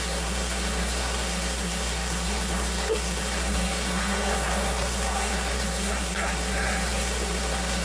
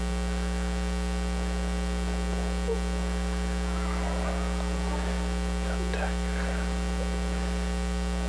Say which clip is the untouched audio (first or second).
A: second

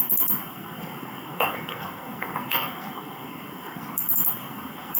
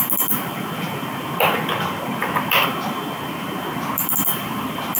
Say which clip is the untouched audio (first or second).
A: second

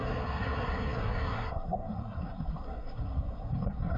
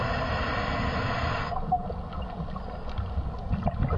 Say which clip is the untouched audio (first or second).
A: second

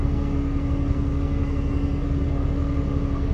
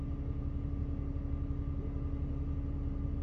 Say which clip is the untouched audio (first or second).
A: second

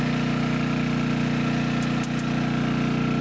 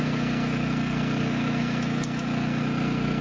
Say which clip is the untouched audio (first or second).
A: first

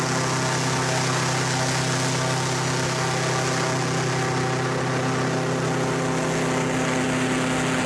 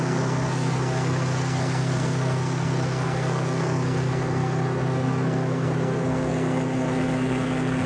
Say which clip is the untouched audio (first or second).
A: first